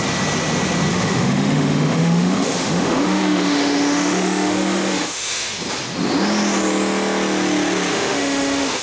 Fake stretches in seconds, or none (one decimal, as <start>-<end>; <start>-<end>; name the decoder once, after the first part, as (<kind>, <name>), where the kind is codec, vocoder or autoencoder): 0.9-5.6 (autoencoder, DAC-VAE); 7.9-8.8